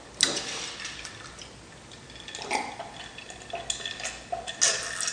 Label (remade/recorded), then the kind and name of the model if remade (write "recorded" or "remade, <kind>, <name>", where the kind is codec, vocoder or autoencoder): recorded